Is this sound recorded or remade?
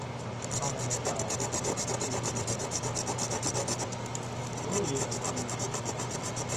recorded